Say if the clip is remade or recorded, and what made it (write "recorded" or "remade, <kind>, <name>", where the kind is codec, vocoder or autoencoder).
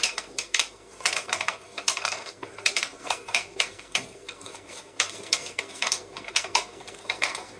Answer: remade, codec, SNAC